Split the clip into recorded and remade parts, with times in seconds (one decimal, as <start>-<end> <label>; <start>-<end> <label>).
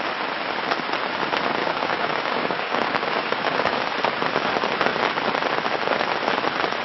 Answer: 0.0-1.6 recorded; 1.6-3.8 remade; 3.8-6.8 recorded